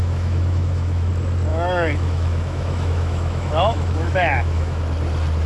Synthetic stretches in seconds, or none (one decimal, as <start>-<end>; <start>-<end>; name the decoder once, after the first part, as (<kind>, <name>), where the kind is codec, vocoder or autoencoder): 0.0-1.1 (autoencoder, DAC-VAE); 1.5-4.8